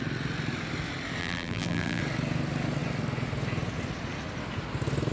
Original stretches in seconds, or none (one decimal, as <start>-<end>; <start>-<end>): 0.0-1.2; 2.0-5.1